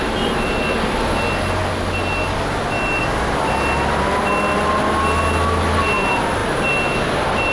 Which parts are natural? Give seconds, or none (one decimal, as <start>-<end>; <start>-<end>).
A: 0.0-7.5